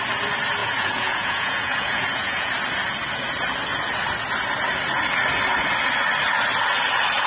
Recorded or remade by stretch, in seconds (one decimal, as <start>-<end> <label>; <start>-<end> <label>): 0.0-0.6 recorded; 0.6-2.5 remade; 2.5-7.3 recorded